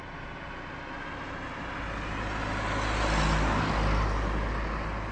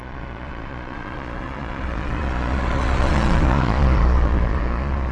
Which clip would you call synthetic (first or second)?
second